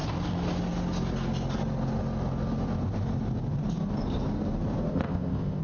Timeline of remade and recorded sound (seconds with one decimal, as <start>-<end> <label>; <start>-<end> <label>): 0.0-4.9 recorded; 4.9-5.6 remade